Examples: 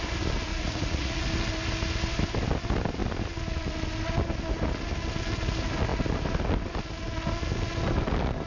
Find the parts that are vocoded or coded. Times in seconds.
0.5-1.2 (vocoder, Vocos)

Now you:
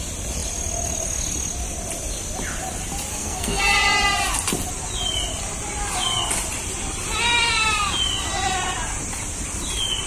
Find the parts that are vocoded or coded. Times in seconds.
3.1-3.6 (codec, SNAC)

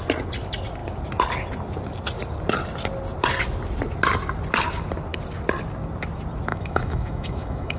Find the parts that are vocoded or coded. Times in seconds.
6.5-7.8 (autoencoder, DAC-VAE)

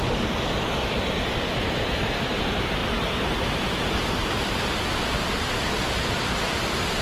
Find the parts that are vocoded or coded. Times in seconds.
none

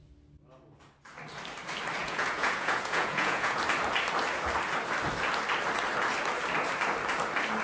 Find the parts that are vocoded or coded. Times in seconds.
2.0-3.6 (vocoder, Vocos)

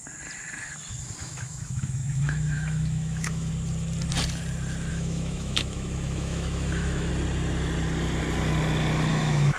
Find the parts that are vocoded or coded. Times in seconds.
1.2-3.5 (autoencoder, DAC-VAE); 4.9-7.1; 9.1-9.6

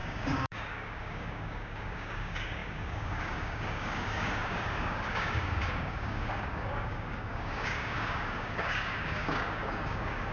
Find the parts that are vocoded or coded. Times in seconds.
0.0-10.3 (codec, DAC)

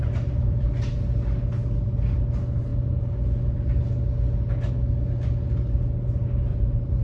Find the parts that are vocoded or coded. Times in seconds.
0.0-0.7 (vocoder, BigVGAN v2); 6.5-7.0